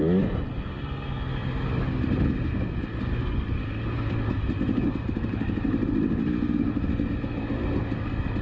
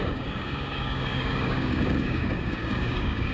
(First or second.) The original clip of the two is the first